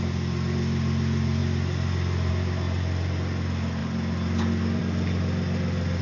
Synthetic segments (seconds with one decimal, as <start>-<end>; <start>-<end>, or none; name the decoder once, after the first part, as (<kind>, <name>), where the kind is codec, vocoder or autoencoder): none